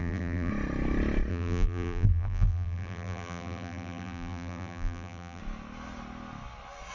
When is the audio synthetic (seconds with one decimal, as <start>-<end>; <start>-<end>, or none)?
0.0-0.5; 1.3-5.4